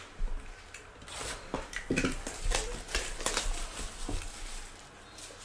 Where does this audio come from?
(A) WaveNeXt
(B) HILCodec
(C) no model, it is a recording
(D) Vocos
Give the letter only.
C